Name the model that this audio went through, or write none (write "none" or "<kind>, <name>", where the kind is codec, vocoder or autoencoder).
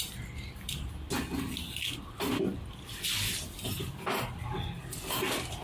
none